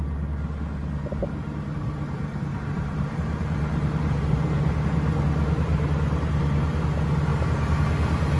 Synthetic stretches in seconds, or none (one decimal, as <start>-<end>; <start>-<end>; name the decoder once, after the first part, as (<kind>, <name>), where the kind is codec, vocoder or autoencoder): 2.5-4.7 (vocoder, BigVGAN v2); 7.3-7.8